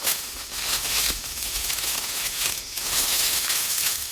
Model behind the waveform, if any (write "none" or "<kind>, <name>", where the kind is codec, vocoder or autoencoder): autoencoder, DAC-VAE